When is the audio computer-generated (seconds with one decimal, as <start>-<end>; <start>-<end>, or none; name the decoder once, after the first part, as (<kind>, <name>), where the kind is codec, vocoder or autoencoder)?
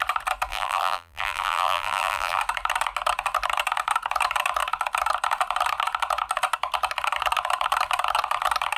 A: 0.5-2.4 (vocoder, BigVGAN v2)